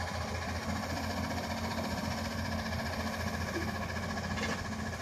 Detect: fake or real real